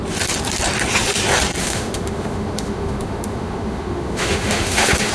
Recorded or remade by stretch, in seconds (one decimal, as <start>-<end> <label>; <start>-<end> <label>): 0.0-1.6 recorded; 1.6-5.1 remade